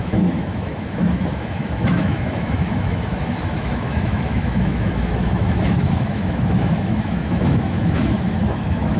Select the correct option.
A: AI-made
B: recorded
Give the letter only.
A